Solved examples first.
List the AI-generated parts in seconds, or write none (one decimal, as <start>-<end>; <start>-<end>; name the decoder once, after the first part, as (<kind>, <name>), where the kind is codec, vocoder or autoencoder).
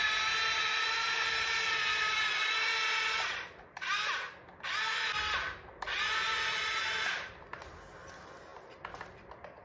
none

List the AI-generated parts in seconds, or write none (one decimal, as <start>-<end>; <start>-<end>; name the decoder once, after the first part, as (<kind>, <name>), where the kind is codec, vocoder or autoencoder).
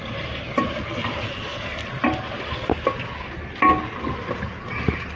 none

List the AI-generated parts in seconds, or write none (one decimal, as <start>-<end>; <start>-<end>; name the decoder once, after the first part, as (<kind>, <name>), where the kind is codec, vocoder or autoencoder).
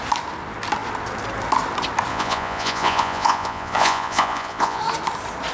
2.1-4.8 (vocoder, Vocos)